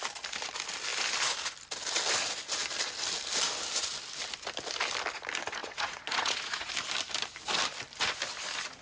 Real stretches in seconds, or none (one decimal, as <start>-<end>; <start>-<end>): 0.0-5.6; 6.7-8.8